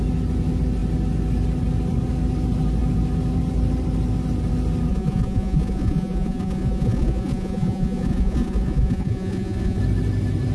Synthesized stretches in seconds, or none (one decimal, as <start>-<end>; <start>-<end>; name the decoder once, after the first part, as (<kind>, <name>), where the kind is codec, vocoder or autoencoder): 4.9-9.8 (vocoder, Vocos)